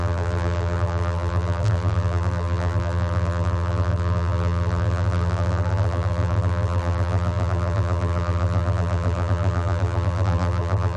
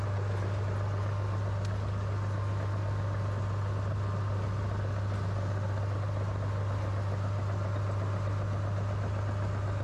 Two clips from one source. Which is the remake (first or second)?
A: first